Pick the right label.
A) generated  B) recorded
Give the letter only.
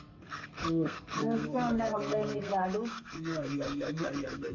A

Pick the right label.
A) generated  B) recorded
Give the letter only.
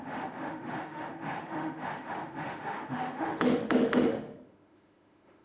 A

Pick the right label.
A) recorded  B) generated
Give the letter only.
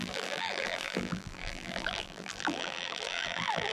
B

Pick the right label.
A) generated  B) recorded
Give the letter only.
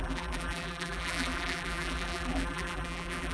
A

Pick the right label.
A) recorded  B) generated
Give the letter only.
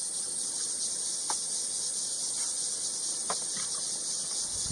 A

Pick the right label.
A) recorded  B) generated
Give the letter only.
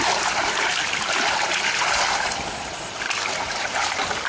A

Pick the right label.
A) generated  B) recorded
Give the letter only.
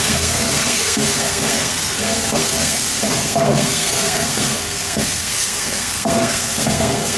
A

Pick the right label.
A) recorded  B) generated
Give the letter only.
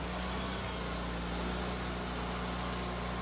A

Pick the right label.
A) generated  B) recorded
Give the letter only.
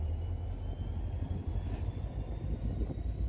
B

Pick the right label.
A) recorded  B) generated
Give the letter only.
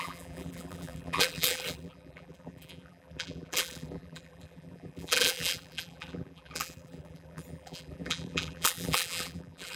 B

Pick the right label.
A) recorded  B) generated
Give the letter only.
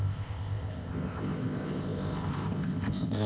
B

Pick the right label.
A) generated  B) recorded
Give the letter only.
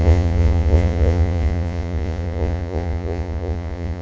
A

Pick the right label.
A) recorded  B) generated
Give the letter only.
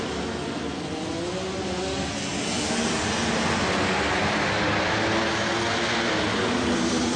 A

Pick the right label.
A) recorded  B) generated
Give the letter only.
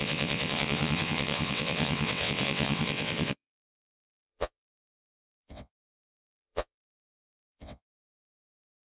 B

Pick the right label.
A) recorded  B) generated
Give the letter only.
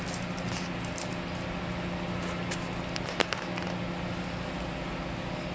A